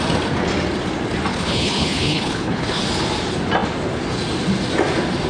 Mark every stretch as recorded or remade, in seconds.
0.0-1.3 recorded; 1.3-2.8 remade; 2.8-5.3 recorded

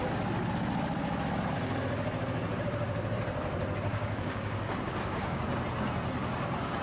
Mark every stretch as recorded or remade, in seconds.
0.0-3.9 recorded; 3.9-5.4 remade; 5.4-6.8 recorded

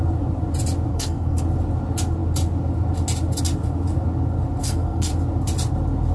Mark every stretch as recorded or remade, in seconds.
0.0-0.9 recorded; 0.9-1.4 remade; 1.4-4.6 recorded; 4.6-5.1 remade; 5.1-6.1 recorded

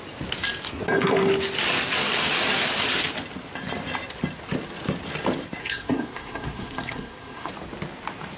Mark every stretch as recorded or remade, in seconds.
0.0-5.6 recorded; 5.6-7.5 remade; 7.5-8.4 recorded

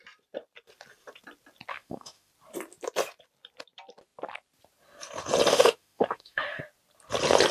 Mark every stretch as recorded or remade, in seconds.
0.0-1.7 recorded; 1.7-2.3 remade; 2.3-5.5 recorded; 5.5-6.6 remade; 6.6-7.5 recorded

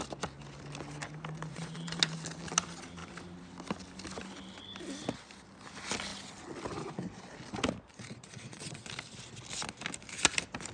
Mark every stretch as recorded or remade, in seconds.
0.0-1.5 recorded; 1.5-2.0 remade; 2.0-7.9 recorded; 7.9-8.8 remade; 8.8-10.7 recorded

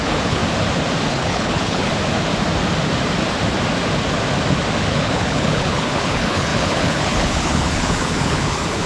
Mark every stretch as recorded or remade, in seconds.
0.0-0.4 remade; 0.4-1.1 recorded; 1.1-1.9 remade; 1.9-4.9 recorded; 4.9-8.9 remade

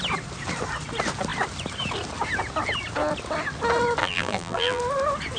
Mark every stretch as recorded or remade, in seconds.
0.0-4.0 recorded; 4.0-4.8 remade; 4.8-5.4 recorded